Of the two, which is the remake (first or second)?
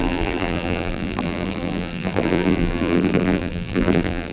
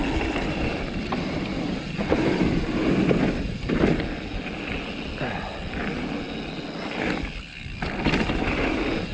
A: first